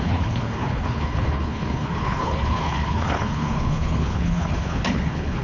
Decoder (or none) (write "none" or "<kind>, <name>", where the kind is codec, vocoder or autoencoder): codec, HILCodec